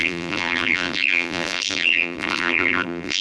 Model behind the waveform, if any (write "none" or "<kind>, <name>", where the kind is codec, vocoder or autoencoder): vocoder, BigVGAN v2